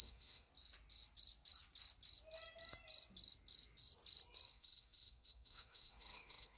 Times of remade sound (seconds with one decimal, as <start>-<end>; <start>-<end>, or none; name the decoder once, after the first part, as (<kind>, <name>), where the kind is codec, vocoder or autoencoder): 0.0-0.5 (autoencoder, DAC-VAE); 4.5-6.6